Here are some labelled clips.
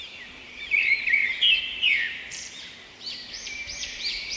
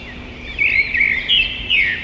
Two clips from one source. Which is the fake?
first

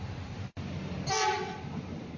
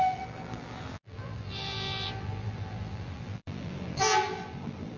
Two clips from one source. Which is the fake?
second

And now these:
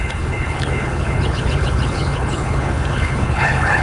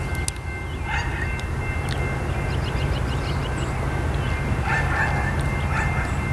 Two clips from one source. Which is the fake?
first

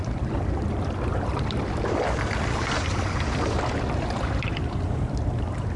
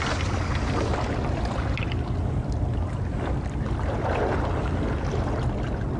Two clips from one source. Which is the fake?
first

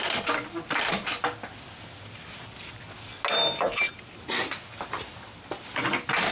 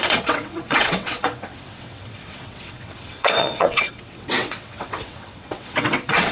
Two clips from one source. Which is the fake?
second